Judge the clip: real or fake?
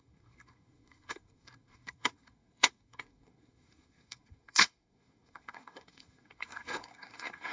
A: fake